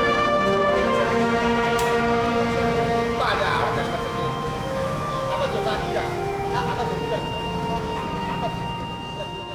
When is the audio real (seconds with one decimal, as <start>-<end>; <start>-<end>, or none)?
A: none